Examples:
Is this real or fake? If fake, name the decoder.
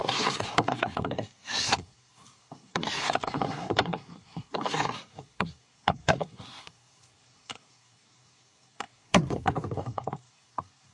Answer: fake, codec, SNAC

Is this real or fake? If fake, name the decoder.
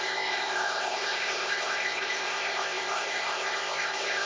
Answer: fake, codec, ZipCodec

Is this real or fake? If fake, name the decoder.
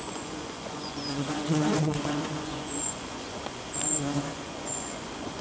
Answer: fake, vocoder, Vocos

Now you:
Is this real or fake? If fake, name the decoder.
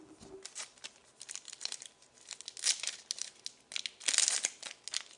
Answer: real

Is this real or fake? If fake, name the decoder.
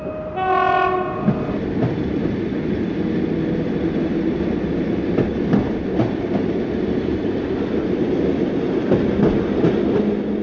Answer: real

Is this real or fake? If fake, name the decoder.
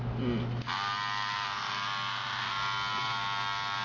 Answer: real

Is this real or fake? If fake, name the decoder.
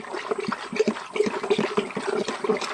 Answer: real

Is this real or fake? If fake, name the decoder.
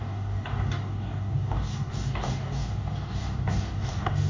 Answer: fake, codec, DAC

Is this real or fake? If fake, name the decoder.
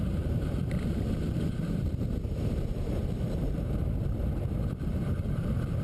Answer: fake, vocoder, BigVGAN v2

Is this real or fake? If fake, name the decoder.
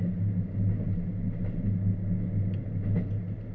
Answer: real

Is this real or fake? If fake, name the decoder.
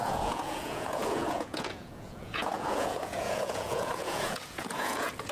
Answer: fake, vocoder, Vocos